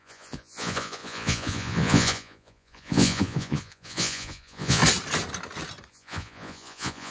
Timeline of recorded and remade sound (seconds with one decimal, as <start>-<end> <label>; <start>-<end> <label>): 0.0-4.8 remade; 4.8-5.9 recorded; 5.9-7.1 remade

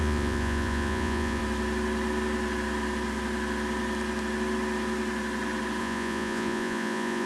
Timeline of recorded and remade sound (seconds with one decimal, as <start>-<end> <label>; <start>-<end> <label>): 0.0-1.4 remade; 1.4-5.8 recorded; 5.8-7.3 remade

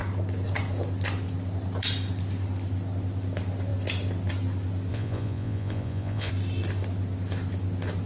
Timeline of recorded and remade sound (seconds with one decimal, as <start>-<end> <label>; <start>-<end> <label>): 0.0-4.9 recorded; 4.9-6.3 remade; 6.3-8.1 recorded

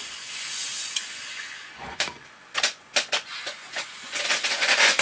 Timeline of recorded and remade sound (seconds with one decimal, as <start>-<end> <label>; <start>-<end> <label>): 0.0-5.0 remade

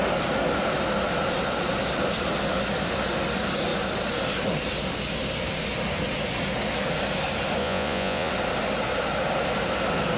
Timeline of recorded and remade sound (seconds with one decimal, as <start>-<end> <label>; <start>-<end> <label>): 0.0-7.6 recorded; 7.6-8.3 remade; 8.3-10.2 recorded

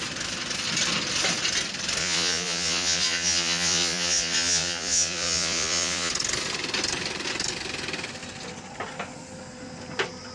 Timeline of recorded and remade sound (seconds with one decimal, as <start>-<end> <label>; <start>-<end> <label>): 0.0-2.0 recorded; 2.0-6.1 remade; 6.1-10.3 recorded